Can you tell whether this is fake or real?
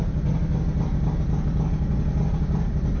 real